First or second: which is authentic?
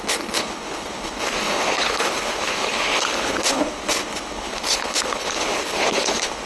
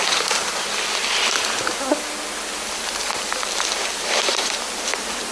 second